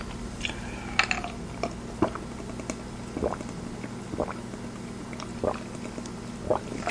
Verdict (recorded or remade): recorded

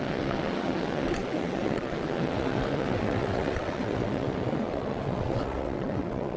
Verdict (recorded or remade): remade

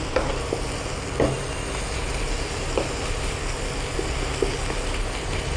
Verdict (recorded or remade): recorded